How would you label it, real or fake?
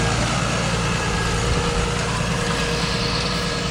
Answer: real